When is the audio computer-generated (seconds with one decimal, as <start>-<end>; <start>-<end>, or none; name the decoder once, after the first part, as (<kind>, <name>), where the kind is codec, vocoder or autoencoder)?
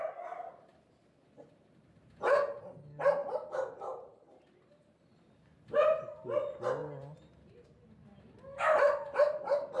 none